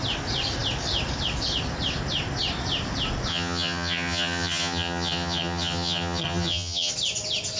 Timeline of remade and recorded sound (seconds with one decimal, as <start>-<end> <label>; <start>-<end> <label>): 0.0-3.3 recorded; 3.3-6.9 remade; 6.9-7.6 recorded